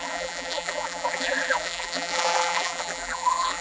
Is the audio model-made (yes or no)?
yes